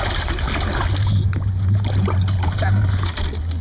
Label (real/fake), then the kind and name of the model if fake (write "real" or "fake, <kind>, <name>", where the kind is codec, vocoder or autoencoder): real